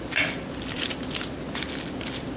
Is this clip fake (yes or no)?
yes